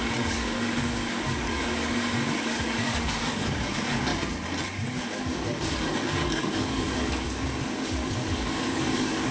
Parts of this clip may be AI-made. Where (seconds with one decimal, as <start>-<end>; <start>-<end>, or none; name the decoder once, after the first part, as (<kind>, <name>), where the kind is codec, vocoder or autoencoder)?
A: 0.0-4.1 (codec, DAC); 4.7-9.3